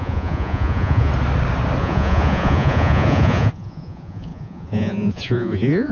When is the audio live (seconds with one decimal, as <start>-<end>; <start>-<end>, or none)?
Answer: 1.1-1.8

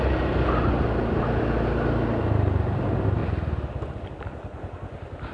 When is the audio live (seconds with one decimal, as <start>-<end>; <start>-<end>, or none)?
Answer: 0.0-5.3